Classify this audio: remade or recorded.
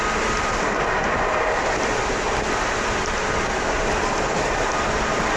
recorded